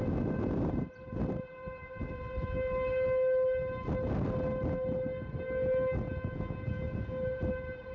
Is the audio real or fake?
real